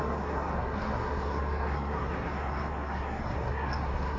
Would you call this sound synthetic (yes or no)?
yes